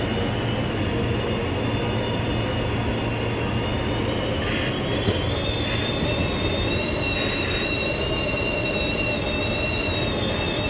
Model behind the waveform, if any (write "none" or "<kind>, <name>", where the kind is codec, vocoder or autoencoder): none